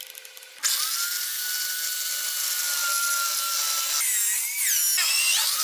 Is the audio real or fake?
real